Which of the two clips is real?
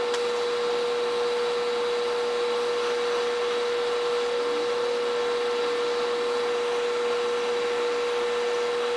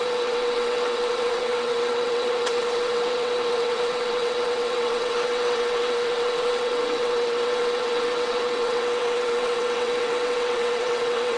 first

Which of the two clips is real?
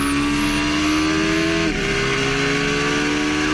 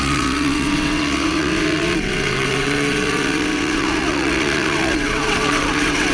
first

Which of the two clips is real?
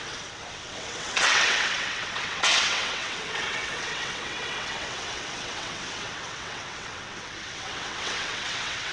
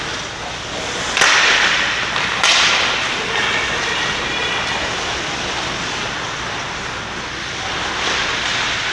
second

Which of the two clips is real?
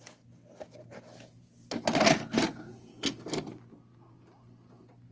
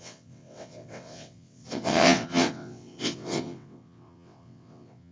first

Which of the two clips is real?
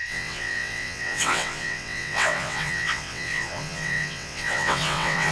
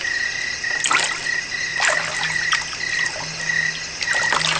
second